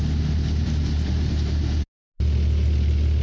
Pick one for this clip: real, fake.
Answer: real